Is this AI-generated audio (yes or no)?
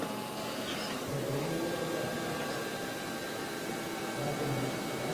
no